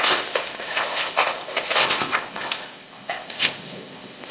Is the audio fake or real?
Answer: fake